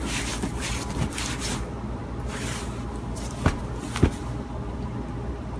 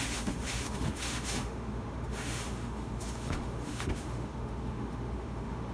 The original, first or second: first